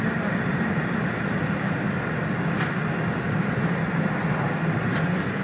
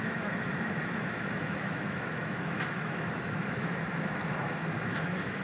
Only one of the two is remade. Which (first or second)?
second